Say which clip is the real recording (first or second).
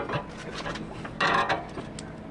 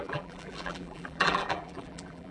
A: first